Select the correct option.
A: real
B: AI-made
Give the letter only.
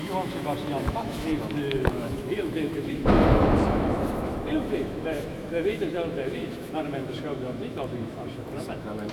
B